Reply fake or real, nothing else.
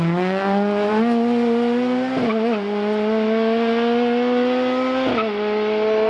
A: real